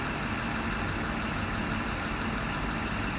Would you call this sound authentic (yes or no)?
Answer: yes